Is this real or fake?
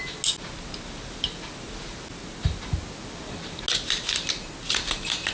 real